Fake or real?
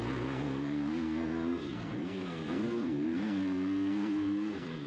fake